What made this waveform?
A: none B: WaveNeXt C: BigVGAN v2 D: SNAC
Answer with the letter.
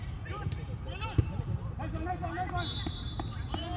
A